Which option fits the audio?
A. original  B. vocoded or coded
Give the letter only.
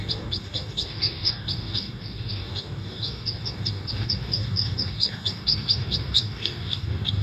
B